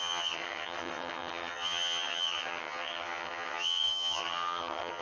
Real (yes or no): no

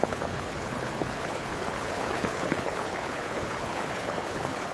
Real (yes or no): no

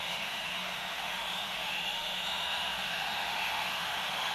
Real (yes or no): no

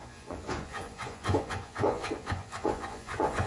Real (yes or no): no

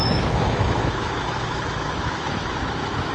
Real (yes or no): no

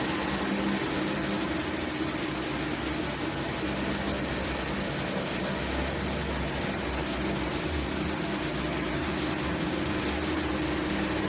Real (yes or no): yes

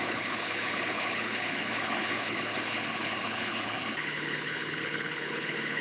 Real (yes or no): no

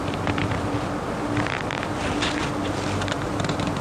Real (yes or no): no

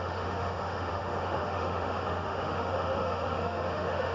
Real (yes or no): no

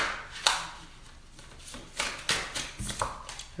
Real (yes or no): yes